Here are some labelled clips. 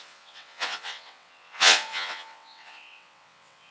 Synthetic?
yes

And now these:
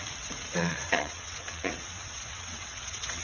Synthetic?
yes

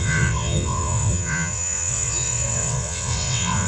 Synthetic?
yes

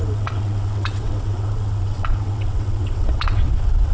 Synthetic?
yes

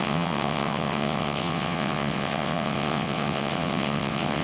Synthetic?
yes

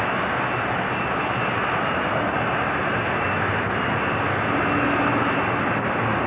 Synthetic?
no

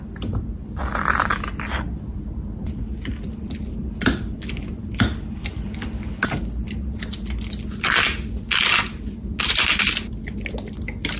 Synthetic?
no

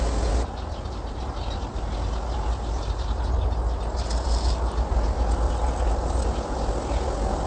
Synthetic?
no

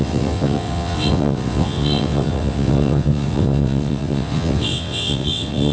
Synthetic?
yes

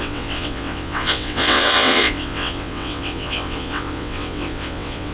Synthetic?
yes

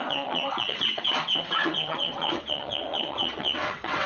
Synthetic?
yes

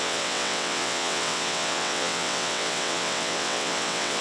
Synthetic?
yes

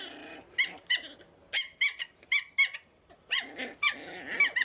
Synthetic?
no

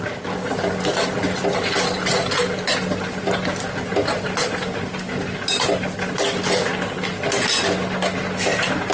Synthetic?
no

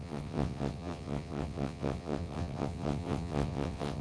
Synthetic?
yes